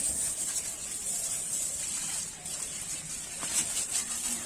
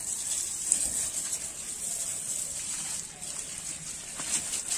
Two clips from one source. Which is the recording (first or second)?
second